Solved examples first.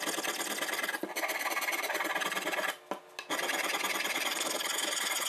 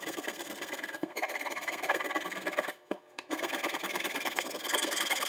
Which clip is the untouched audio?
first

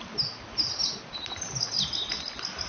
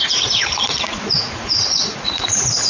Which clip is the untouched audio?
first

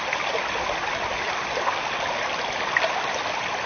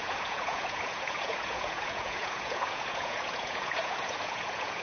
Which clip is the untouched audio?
first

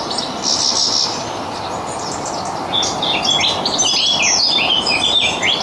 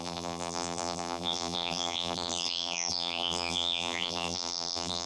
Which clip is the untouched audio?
first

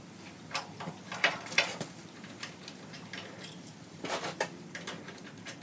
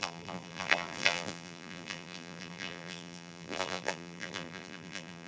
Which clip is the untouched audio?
first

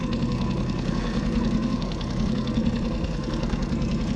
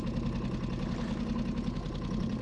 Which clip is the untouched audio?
second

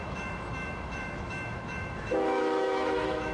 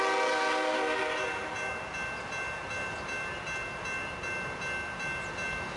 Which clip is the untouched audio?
second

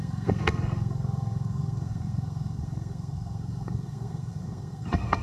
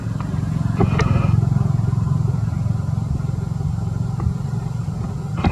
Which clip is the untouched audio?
second